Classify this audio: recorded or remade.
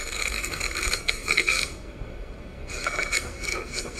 remade